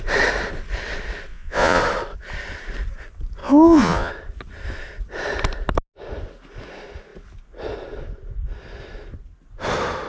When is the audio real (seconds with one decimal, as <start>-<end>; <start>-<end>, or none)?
0.0-1.3; 1.8-3.4; 4.1-10.1